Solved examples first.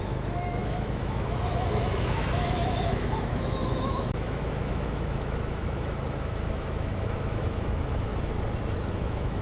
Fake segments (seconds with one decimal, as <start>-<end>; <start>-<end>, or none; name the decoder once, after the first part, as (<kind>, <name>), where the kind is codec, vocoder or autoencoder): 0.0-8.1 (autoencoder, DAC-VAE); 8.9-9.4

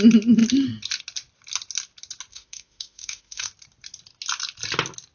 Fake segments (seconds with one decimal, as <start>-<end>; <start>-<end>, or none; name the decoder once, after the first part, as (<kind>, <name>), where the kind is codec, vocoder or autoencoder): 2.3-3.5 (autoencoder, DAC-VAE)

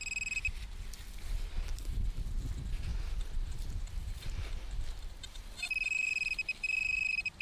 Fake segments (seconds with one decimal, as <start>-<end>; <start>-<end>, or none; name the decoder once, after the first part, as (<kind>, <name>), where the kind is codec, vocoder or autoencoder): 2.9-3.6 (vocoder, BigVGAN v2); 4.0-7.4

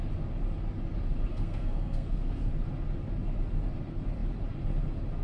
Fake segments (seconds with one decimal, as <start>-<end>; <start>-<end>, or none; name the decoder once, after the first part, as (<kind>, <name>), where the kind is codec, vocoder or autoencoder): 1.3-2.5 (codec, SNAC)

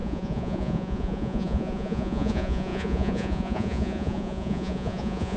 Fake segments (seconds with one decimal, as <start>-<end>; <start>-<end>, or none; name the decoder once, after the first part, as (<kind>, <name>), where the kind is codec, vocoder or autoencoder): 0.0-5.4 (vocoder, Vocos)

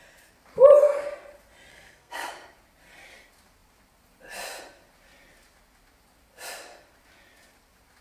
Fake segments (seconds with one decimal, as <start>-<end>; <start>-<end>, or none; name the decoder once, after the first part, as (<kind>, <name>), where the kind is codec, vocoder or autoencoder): 1.7-2.3 (codec, SNAC)